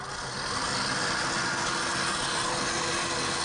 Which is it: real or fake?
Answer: real